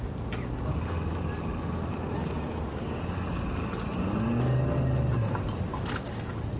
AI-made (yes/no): no